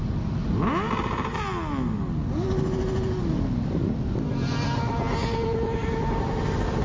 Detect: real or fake real